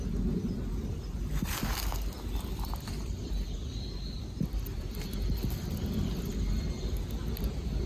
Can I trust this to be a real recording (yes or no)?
yes